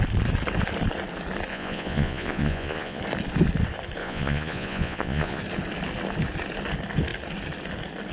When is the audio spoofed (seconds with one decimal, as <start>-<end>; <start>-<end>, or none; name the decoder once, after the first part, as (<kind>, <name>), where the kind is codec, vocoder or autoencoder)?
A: 1.5-3.0 (vocoder, Vocos); 4.0-5.4